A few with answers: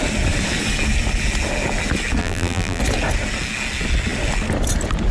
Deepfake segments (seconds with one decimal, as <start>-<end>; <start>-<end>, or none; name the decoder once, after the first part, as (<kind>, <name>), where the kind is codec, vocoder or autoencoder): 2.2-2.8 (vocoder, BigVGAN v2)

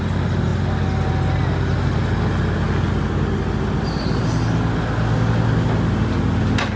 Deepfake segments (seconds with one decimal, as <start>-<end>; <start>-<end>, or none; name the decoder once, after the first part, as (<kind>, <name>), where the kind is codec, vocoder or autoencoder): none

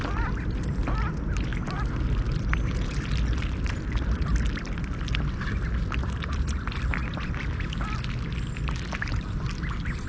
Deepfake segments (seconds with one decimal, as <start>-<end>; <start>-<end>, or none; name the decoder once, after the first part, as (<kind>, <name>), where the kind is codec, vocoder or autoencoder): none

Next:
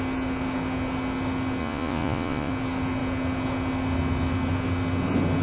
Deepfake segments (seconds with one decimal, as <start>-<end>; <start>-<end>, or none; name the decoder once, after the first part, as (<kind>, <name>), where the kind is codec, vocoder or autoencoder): 1.6-2.5 (vocoder, Vocos)

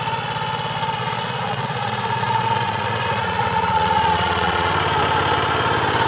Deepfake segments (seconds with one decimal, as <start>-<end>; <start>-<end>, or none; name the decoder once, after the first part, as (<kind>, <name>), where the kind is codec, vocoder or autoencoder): 1.0-4.7 (vocoder, Vocos)

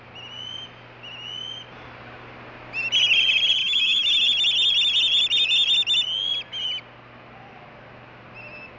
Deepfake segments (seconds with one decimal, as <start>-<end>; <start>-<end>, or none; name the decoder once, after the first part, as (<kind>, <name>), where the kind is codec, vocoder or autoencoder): 3.6-4.2 (autoencoder, DAC-VAE)

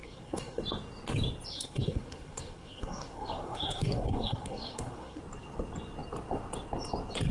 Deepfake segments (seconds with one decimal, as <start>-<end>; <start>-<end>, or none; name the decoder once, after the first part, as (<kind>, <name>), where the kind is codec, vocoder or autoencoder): 0.0-0.6 (codec, SNAC); 1.5-5.2

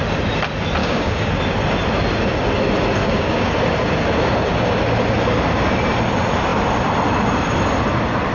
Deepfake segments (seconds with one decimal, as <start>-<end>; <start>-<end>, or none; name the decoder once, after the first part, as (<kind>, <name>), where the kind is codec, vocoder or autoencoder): 0.8-1.3 (codec, DAC); 3.0-3.5